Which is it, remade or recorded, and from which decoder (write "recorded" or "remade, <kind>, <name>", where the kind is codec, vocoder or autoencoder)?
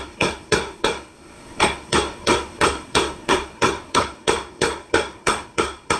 remade, codec, SNAC